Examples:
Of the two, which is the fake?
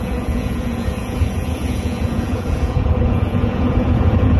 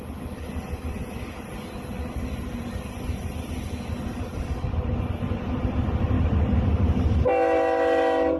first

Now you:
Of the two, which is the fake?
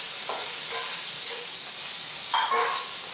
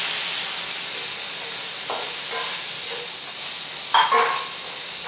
first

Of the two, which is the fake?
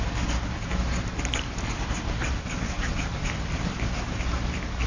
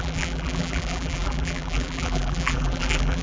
second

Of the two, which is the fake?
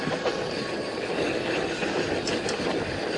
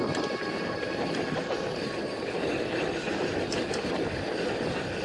second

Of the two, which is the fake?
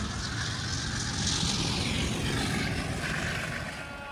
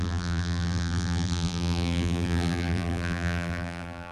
second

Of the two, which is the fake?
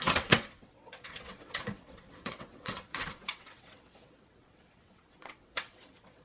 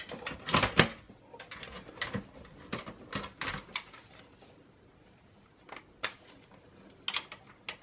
first